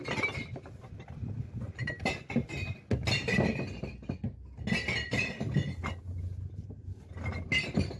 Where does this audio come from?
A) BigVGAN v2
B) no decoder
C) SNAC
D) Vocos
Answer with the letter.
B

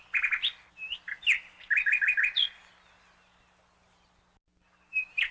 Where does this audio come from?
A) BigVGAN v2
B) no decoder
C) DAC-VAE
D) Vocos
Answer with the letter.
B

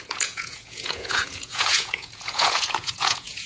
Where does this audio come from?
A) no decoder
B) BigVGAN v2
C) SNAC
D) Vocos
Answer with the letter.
D